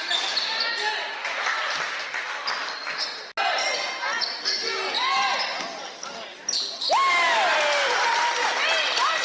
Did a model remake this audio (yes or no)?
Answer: no